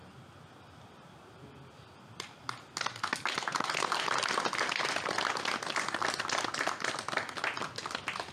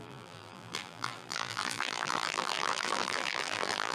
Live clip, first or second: first